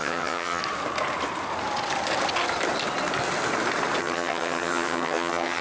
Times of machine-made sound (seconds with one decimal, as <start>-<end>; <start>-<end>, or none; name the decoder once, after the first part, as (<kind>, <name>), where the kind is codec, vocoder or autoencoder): 0.0-0.6 (vocoder, HiFi-GAN); 4.0-5.6